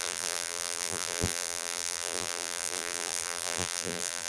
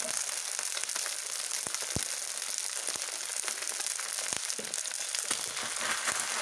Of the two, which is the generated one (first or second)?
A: first